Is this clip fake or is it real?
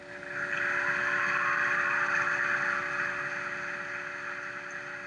real